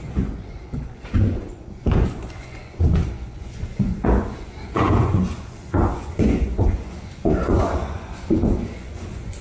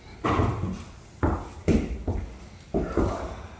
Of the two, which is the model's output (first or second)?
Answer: first